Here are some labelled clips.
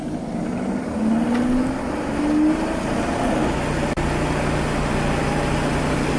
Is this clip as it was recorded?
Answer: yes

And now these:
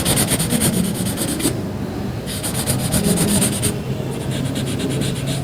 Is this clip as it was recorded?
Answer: yes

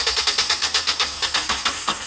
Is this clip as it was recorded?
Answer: no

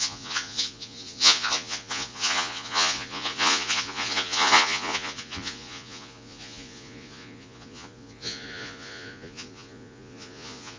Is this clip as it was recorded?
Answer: no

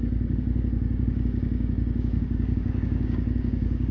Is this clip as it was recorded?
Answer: no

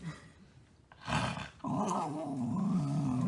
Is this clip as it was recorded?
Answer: yes